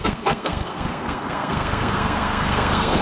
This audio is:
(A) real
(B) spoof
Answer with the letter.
B